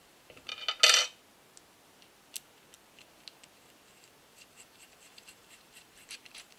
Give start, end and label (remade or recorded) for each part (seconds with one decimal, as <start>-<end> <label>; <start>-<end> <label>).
0.0-0.5 remade; 0.5-4.5 recorded; 4.5-6.6 remade